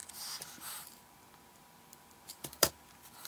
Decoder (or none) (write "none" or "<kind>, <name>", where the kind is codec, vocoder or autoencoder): vocoder, BigVGAN v2